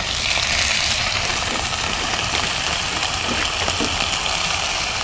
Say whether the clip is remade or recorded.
recorded